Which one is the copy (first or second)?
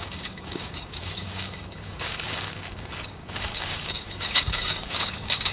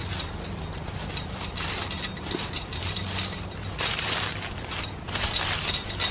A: first